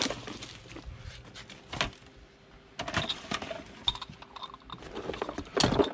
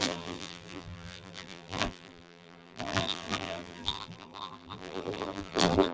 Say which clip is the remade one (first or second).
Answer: second